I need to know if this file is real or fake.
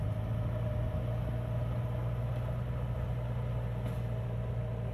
real